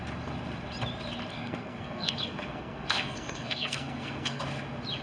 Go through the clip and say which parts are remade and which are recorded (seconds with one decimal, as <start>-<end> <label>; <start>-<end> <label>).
0.0-1.4 recorded; 1.4-4.4 remade; 4.4-5.0 recorded